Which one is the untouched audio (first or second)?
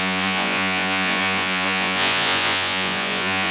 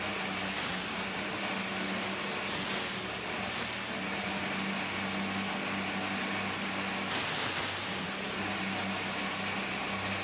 second